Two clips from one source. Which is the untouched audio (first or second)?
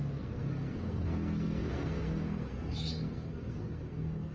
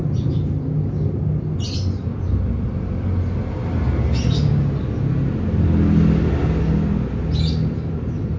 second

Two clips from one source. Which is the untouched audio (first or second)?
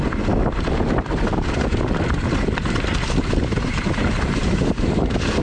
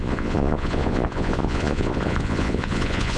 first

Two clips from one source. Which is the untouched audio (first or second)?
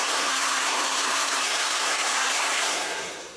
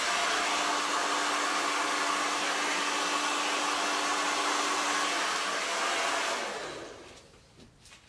second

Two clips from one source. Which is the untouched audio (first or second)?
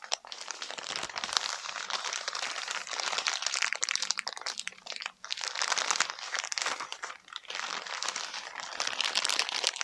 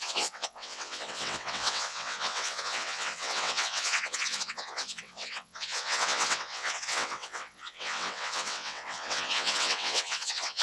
first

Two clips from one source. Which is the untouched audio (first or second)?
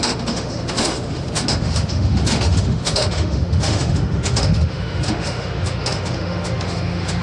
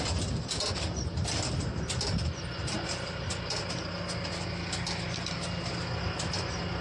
second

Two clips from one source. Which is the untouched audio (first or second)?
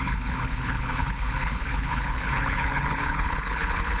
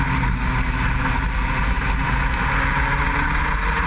second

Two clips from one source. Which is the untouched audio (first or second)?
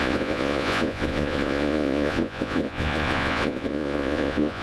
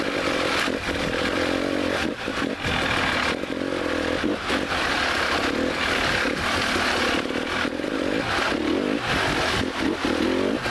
second